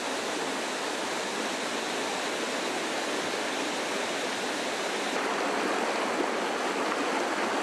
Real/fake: real